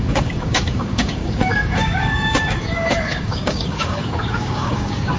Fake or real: fake